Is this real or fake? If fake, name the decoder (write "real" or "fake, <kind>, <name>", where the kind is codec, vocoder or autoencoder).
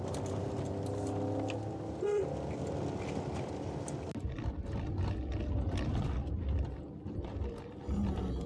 real